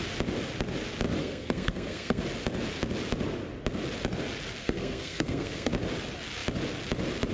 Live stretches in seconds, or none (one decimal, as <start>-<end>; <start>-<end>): 0.0-1.2; 2.2-4.6; 5.7-7.3